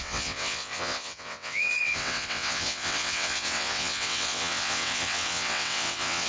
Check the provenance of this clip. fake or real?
fake